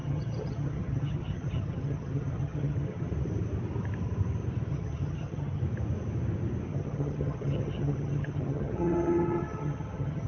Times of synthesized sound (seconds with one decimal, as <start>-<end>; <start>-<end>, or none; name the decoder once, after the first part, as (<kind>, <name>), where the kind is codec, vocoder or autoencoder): 0.0-3.1 (vocoder, HiFi-GAN); 4.7-5.6; 6.7-10.3